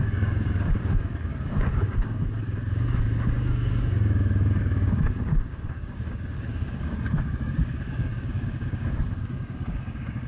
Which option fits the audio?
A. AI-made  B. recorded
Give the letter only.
A